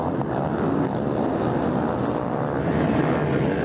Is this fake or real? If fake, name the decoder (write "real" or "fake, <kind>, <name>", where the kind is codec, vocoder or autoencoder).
real